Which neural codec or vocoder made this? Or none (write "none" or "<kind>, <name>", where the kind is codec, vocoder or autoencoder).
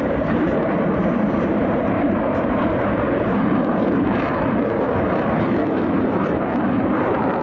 vocoder, BigVGAN v2